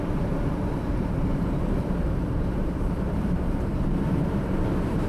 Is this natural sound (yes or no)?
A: no